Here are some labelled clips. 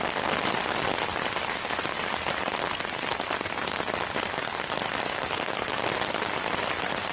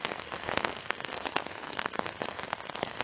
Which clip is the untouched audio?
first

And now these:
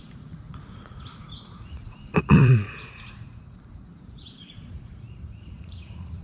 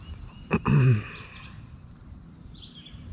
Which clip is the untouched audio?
second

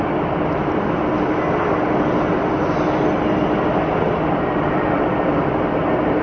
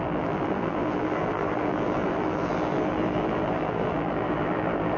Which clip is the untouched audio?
first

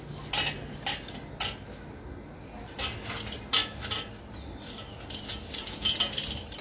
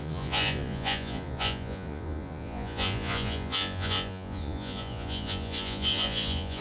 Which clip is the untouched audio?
first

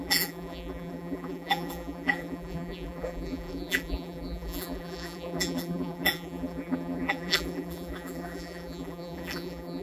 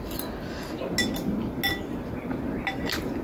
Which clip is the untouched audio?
second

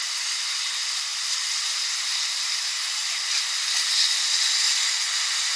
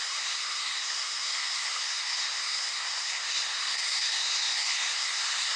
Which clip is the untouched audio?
first